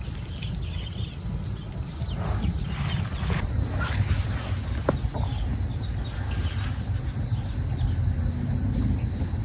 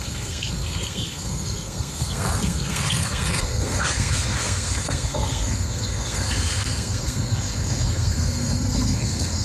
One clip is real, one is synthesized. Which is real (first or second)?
first